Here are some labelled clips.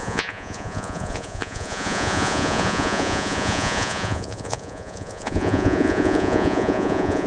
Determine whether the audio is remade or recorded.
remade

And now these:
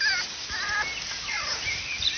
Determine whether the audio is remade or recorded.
recorded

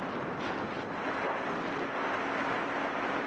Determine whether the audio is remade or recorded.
recorded